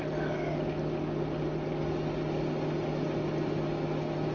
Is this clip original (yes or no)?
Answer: yes